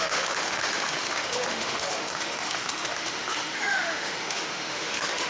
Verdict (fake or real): fake